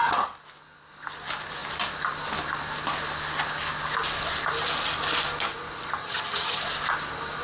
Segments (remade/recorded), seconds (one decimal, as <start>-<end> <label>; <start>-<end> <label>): 0.0-6.0 recorded; 6.0-6.6 remade; 6.6-7.4 recorded